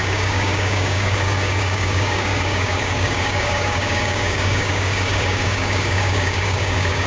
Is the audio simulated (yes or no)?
yes